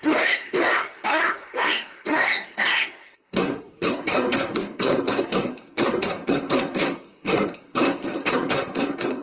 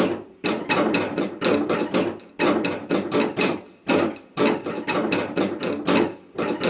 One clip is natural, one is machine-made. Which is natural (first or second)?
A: second